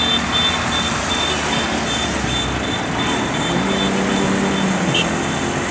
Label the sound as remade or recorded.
recorded